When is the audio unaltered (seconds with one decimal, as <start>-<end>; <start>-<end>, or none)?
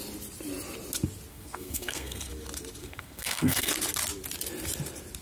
0.0-1.3; 2.3-2.8; 3.7-5.2